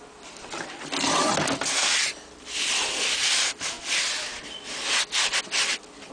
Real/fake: real